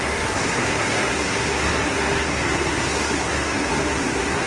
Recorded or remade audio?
remade